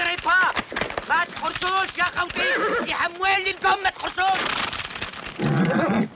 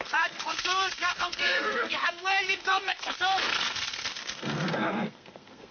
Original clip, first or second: first